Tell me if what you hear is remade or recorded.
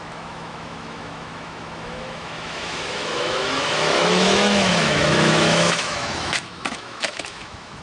remade